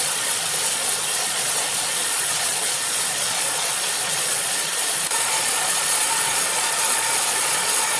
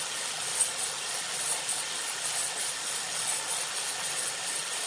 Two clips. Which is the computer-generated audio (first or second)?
first